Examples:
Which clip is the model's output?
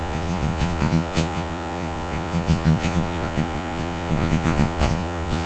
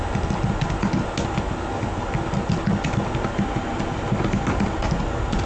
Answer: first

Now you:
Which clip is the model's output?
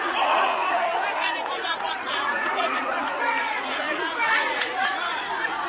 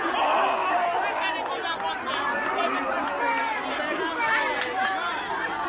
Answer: first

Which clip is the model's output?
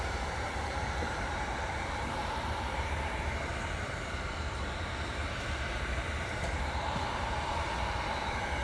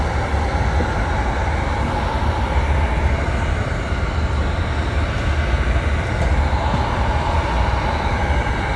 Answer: first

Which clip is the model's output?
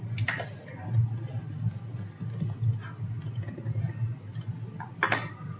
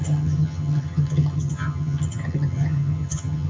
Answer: second